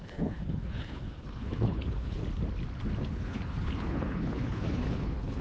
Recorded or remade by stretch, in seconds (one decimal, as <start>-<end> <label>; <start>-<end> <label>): 0.0-2.2 remade; 2.2-3.1 recorded; 3.1-5.4 remade